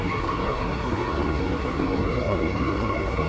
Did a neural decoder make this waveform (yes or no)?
yes